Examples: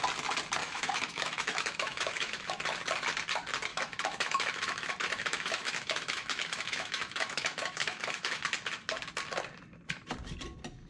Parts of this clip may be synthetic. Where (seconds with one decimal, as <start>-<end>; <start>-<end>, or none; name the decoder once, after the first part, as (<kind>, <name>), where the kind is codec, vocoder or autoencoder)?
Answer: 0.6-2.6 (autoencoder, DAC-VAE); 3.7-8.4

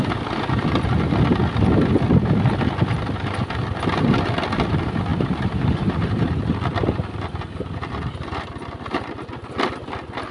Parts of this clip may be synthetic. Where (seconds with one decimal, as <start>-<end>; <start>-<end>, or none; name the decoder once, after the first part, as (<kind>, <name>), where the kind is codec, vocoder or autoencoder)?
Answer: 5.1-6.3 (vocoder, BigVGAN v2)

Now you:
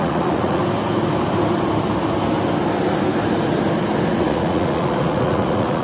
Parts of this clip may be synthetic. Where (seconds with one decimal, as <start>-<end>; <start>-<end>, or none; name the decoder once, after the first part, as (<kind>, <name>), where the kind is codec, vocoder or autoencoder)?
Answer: 0.0-0.6 (vocoder, Vocos); 4.1-5.8

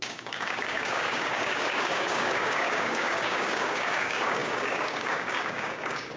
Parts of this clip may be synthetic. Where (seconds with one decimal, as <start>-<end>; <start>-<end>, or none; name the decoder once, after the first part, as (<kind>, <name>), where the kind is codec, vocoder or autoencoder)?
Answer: 0.0-6.2 (codec, DAC)